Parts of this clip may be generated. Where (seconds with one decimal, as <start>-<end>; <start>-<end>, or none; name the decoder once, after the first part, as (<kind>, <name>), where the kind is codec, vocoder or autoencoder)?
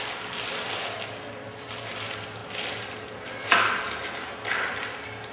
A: none